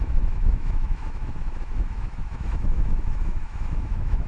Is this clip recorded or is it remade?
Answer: remade